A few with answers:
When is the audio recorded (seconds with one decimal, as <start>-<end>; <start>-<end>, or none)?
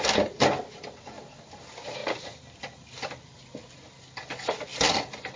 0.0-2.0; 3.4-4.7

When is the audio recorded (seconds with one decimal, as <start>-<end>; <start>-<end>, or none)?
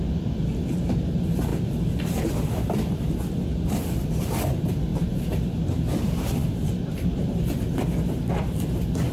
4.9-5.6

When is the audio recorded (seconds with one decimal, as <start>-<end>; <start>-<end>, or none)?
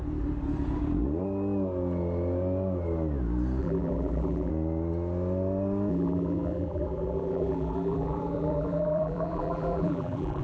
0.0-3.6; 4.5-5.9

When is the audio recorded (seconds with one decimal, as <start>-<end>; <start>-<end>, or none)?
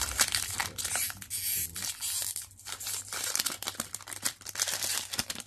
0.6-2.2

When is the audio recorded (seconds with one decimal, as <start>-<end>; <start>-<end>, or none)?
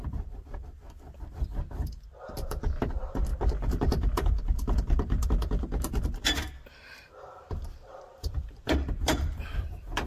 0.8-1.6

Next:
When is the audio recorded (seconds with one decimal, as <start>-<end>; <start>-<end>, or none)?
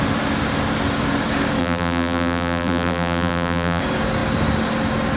0.0-1.6; 3.8-5.2